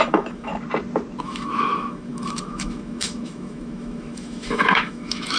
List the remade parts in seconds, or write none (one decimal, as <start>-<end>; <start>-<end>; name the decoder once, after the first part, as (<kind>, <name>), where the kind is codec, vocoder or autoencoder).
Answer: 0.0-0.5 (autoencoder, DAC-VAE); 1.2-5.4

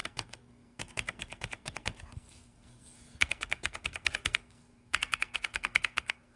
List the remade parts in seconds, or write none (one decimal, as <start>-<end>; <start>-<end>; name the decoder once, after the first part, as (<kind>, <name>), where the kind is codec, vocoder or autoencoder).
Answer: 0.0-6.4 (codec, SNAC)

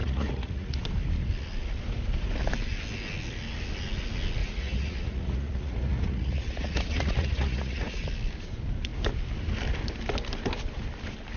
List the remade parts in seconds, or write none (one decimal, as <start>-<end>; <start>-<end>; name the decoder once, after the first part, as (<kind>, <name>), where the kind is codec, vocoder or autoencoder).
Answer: 0.0-0.8 (vocoder, Vocos); 4.4-8.0

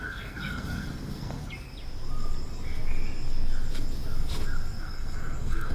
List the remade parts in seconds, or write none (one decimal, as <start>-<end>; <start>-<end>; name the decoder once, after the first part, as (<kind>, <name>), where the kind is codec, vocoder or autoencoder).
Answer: 0.0-1.4 (codec, SNAC); 4.8-5.7